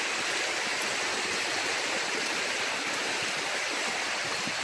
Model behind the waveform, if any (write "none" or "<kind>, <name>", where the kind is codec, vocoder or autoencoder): none